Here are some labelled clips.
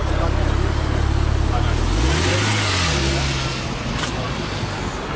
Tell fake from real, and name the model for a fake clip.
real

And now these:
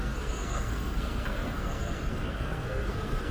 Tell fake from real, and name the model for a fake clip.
fake, codec, SNAC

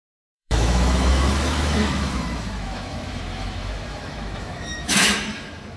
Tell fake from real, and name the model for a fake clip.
fake, autoencoder, DAC-VAE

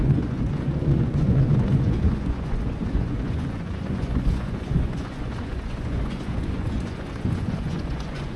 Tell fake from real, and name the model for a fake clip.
fake, vocoder, Vocos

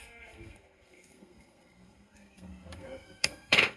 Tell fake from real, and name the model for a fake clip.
fake, codec, SNAC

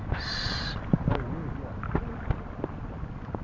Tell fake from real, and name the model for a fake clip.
real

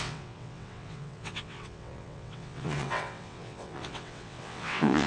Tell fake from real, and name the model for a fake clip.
fake, vocoder, WaveNeXt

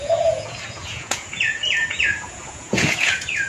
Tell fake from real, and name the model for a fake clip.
fake, vocoder, Vocos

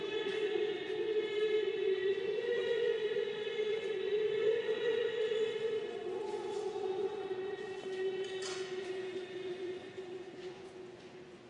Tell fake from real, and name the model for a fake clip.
fake, vocoder, Vocos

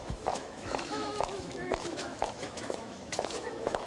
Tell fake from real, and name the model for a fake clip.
fake, autoencoder, DAC-VAE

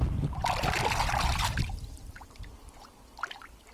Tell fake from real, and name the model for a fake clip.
real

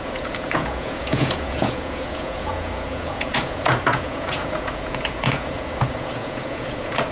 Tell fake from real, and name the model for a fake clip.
fake, vocoder, Vocos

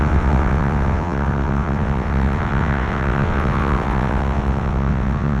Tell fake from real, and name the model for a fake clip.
fake, vocoder, WaveNeXt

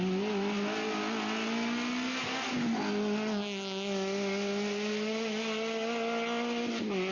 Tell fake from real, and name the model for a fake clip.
real